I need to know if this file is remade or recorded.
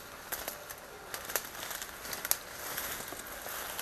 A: recorded